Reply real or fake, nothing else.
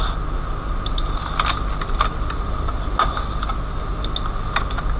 real